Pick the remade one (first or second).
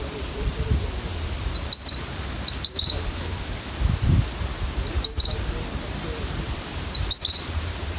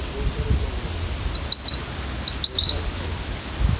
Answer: first